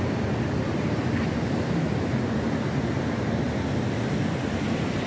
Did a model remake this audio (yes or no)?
no